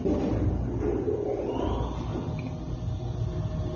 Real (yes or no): yes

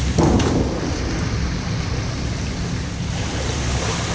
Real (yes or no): yes